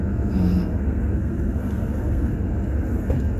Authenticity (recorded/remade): remade